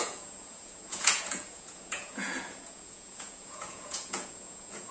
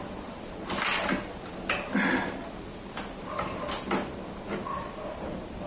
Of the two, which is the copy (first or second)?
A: first